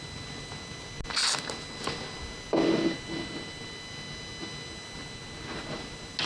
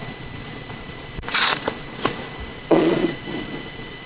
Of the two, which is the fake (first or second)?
second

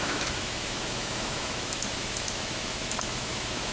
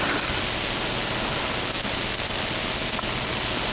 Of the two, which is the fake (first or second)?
first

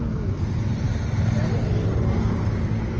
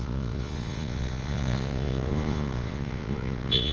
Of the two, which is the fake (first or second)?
second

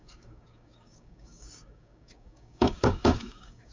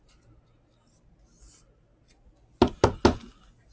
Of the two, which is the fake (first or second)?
first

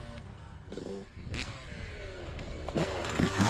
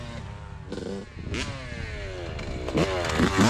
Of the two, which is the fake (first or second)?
first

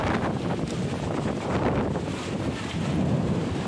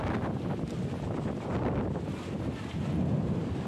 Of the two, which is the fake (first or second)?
first